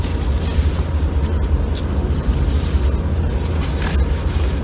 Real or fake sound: real